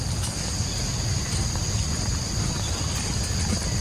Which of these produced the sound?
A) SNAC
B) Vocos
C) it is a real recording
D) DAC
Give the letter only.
C